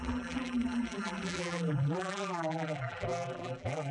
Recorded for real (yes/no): no